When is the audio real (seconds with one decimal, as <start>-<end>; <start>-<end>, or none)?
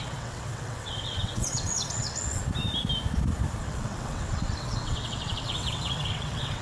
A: 2.4-3.6